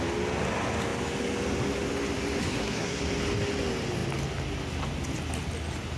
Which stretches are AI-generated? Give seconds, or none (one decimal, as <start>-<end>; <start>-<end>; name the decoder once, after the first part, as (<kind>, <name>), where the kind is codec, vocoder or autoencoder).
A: 2.4-3.0 (codec, SNAC)